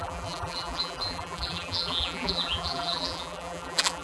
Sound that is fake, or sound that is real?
fake